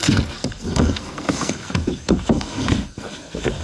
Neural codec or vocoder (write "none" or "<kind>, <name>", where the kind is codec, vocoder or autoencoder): codec, SNAC